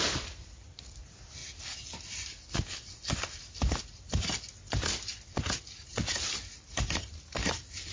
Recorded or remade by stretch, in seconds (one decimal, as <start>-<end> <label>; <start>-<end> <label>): 0.0-7.9 recorded